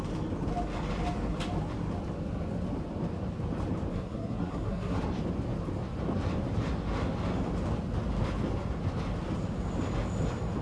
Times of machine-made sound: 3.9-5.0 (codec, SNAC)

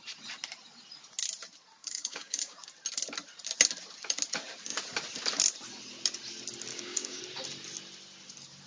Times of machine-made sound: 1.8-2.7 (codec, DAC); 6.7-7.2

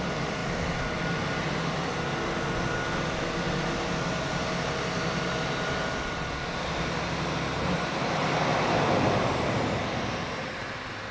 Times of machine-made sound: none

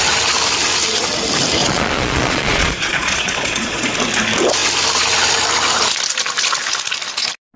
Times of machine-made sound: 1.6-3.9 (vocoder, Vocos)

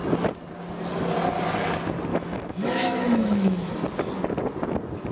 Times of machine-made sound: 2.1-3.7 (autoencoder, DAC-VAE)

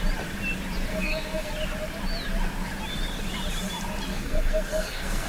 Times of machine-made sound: 0.9-1.5 (codec, SNAC); 4.1-5.3

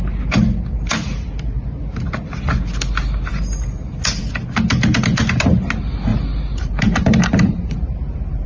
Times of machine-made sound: 6.1-8.5 (vocoder, BigVGAN v2)